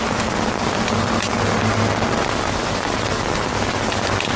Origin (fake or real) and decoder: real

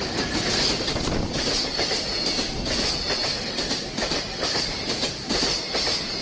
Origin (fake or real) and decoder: real